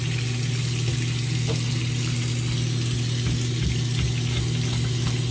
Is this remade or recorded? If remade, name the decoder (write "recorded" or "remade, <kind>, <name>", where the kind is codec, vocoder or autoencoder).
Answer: recorded